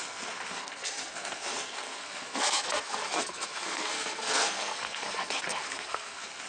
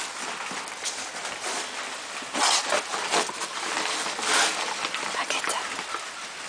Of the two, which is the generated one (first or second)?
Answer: first